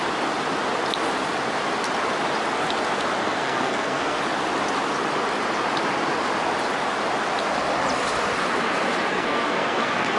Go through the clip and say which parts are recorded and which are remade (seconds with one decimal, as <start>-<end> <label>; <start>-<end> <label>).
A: 0.0-3.2 recorded; 3.2-4.2 remade; 4.2-9.1 recorded; 9.1-10.2 remade